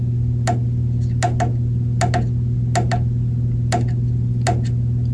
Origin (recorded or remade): recorded